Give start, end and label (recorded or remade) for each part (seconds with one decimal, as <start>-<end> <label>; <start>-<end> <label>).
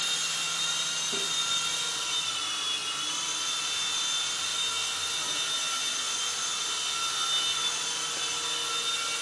0.0-9.2 recorded